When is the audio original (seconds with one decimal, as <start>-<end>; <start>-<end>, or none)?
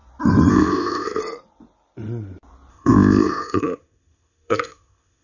0.0-0.5; 1.2-2.7